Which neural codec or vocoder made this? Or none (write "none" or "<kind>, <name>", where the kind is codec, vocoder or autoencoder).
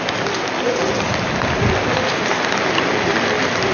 none